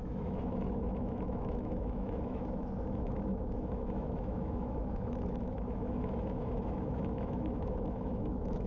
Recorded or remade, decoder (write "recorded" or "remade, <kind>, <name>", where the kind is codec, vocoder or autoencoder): remade, autoencoder, DAC-VAE